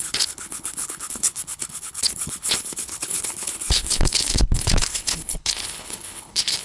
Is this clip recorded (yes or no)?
no